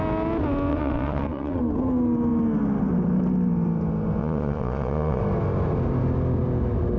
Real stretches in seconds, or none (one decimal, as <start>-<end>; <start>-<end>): 0.0-0.7; 1.6-4.2; 5.2-7.0